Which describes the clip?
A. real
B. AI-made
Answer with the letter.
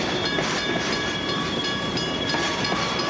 B